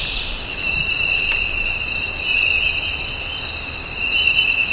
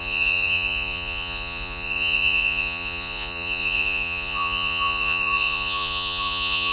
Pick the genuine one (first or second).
first